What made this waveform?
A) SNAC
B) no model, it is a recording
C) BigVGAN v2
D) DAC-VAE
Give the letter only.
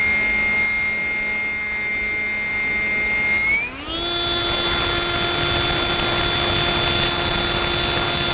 B